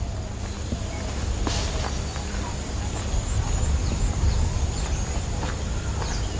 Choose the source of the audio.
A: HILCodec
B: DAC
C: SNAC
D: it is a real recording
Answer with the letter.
D